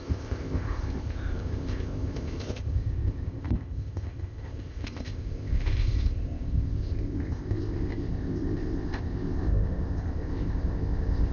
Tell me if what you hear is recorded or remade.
remade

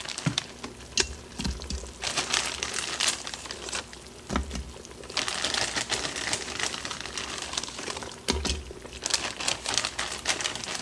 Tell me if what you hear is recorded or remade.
recorded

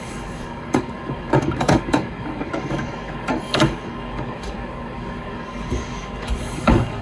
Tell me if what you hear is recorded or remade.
remade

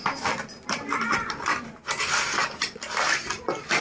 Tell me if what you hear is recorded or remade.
recorded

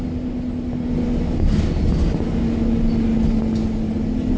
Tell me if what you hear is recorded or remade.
recorded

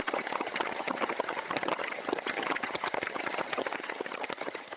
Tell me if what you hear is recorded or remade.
remade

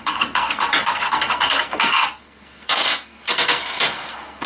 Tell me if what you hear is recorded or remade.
remade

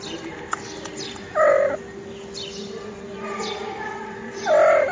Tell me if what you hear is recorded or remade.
recorded